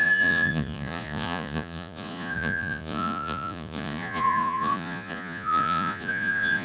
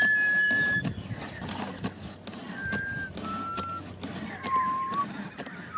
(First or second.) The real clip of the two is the second